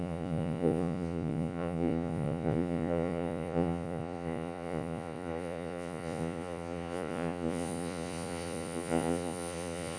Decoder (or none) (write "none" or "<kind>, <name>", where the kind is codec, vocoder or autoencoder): vocoder, Vocos